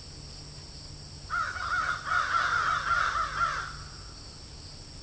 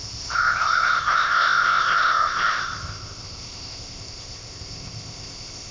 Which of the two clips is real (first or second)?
first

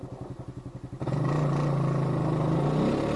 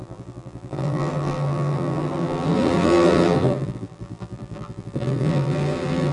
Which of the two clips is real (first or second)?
first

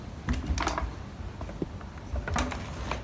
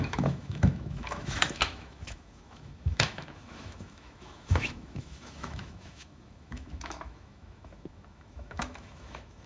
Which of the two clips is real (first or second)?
first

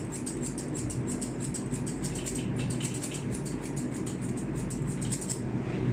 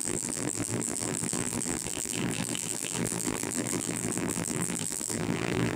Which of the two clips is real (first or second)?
first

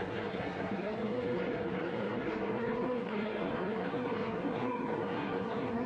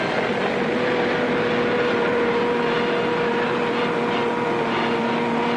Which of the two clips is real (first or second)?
second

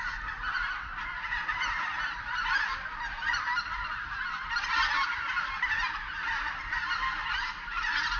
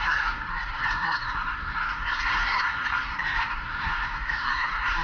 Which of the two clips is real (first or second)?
first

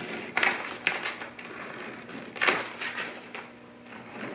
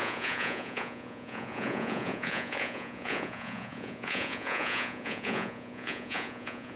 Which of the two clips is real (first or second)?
first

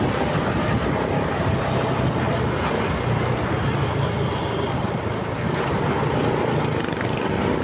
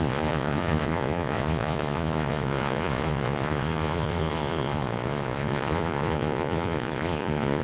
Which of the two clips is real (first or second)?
first